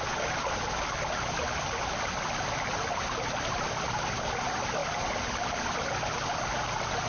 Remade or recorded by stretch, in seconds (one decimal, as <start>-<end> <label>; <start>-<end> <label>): 0.0-7.1 recorded